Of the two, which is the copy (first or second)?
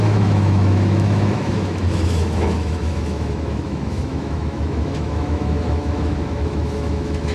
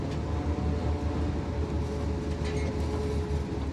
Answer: first